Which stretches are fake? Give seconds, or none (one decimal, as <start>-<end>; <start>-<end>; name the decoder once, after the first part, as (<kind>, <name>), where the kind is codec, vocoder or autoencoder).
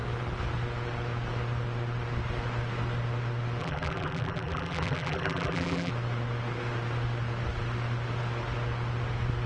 3.6-5.9 (vocoder, BigVGAN v2)